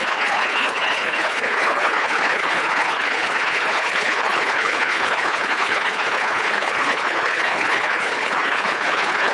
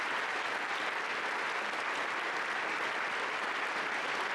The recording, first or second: second